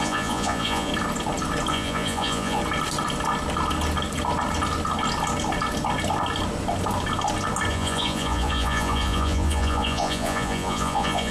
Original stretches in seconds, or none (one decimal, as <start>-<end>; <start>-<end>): 0.9-1.7; 2.6-7.7